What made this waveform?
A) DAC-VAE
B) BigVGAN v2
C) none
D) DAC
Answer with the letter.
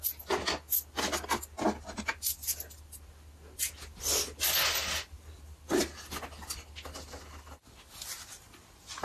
C